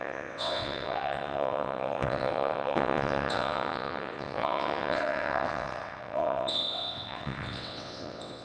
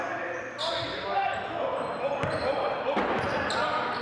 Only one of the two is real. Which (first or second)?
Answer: second